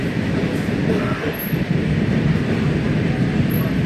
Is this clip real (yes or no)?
yes